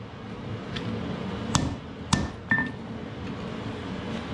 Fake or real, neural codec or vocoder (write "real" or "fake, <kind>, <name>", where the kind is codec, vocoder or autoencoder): real